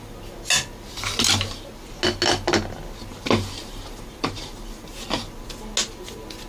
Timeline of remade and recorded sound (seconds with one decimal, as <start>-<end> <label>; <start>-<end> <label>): 0.0-3.1 recorded; 3.1-4.7 remade; 4.7-6.5 recorded